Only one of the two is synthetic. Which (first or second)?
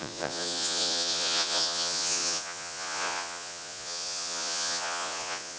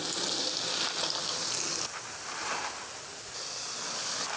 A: first